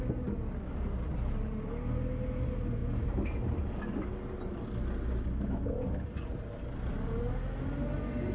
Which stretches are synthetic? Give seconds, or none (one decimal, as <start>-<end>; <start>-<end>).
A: none